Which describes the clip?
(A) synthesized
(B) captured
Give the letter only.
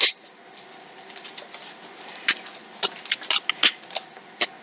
B